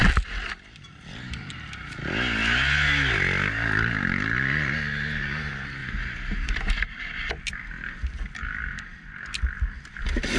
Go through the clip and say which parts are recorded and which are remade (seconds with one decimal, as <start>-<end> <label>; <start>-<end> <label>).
0.0-5.8 recorded; 5.8-6.7 remade; 6.7-10.4 recorded